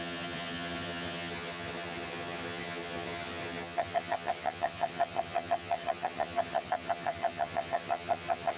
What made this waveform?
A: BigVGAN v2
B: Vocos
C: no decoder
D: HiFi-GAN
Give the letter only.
D